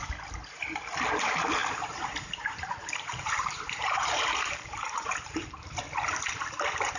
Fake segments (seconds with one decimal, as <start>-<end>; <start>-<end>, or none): 1.6-5.8